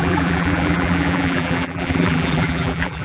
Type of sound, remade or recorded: remade